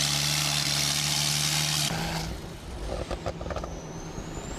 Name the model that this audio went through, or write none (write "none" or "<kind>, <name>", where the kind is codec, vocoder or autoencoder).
none